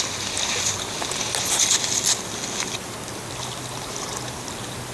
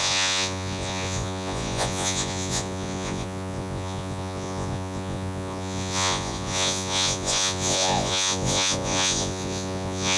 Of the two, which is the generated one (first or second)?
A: second